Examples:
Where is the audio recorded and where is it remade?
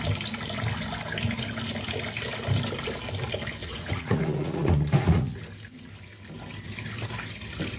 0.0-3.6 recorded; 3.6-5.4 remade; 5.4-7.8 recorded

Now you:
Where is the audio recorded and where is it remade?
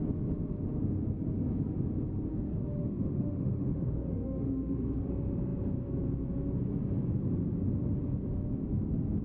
0.0-2.3 recorded; 2.3-5.1 remade; 5.1-9.2 recorded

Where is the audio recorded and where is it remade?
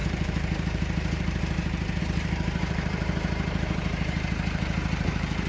0.0-5.5 remade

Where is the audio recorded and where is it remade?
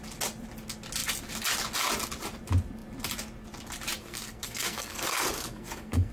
0.0-4.0 recorded; 4.0-6.1 remade